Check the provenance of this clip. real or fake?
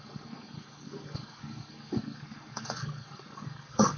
fake